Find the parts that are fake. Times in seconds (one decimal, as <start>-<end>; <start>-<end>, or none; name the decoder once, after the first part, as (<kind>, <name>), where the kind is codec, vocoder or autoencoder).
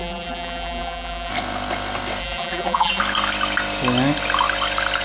0.0-1.3 (vocoder, BigVGAN v2); 2.2-3.0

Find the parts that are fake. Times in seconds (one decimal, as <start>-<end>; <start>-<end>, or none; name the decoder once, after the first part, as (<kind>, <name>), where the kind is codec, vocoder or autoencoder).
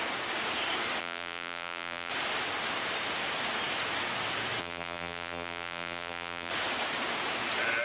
1.0-2.1 (vocoder, BigVGAN v2); 4.6-6.5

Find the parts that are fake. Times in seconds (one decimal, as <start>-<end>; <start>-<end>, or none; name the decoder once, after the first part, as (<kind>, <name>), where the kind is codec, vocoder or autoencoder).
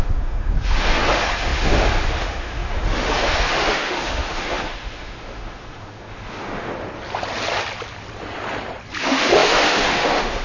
0.0-6.7 (autoencoder, DAC-VAE); 9.0-10.4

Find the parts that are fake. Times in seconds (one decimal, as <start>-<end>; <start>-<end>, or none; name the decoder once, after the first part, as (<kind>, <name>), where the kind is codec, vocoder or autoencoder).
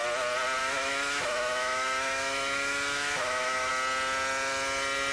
0.6-3.7 (autoencoder, DAC-VAE)